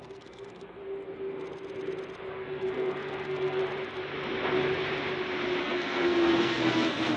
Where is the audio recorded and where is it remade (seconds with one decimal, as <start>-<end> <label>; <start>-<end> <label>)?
0.0-0.8 remade; 0.8-2.3 recorded; 2.3-3.6 remade; 3.6-5.6 recorded; 5.6-7.2 remade